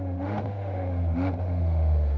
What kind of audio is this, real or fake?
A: fake